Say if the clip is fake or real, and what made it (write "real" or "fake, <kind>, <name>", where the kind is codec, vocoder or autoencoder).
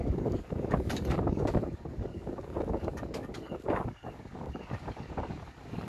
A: fake, codec, DAC